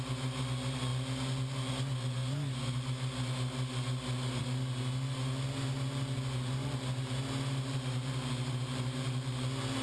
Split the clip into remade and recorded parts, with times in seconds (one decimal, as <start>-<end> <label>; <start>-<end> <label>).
0.0-9.8 recorded